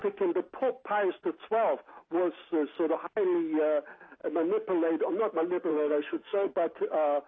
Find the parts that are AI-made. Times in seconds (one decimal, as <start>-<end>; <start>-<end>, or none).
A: 5.7-6.5